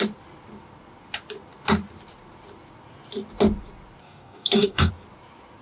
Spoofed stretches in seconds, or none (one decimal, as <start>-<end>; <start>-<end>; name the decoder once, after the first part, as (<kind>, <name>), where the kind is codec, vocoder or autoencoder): 4.0-4.9 (codec, DAC)